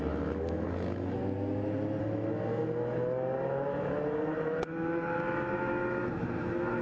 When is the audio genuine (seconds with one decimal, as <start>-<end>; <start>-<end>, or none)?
1.2-2.0